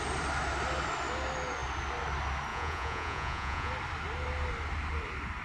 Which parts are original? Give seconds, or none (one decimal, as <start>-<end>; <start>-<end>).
0.0-2.5; 3.7-5.4

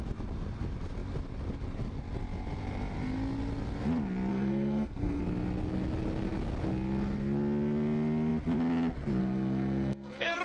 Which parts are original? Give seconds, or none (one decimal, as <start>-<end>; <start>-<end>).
0.0-4.3; 5.2-9.2

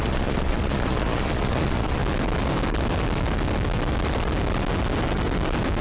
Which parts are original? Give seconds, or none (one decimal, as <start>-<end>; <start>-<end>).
2.0-5.8

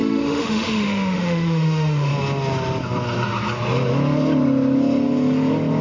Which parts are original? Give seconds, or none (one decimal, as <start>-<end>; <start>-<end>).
2.1-5.8

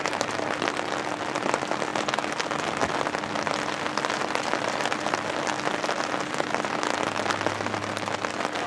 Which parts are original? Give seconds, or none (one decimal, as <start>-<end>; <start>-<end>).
0.0-8.7